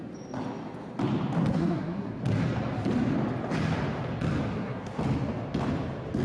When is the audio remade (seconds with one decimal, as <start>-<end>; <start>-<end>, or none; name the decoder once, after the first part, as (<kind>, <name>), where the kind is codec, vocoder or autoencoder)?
1.5-2.2 (codec, SNAC); 4.5-5.0